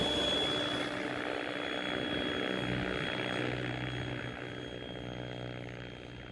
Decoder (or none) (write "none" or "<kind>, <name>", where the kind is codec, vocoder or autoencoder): none